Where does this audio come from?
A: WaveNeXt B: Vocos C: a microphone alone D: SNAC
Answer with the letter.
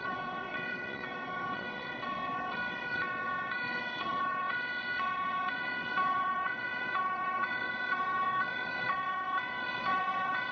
A